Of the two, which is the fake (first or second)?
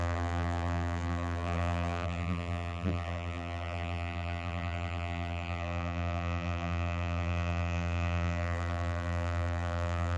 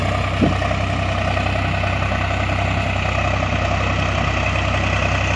first